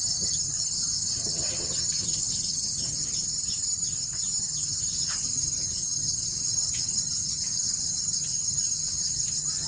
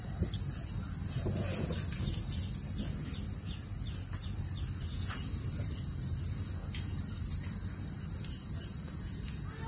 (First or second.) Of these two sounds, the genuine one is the second